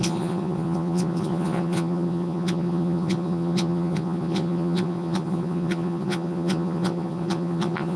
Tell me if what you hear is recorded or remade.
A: remade